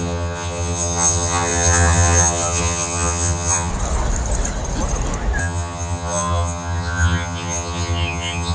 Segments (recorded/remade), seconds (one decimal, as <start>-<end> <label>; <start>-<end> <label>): 0.0-3.7 remade; 3.7-5.4 recorded; 5.4-8.5 remade